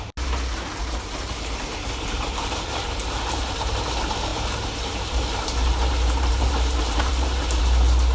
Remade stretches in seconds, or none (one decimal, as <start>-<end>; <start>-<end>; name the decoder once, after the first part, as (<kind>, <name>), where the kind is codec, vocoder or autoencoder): 0.8-3.7 (vocoder, BigVGAN v2); 4.3-7.6